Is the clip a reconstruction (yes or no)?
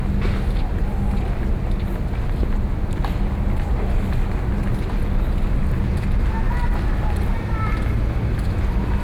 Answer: no